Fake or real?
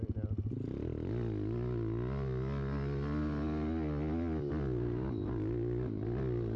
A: real